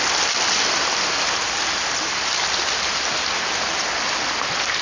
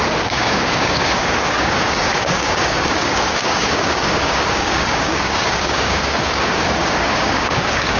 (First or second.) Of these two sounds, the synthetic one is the second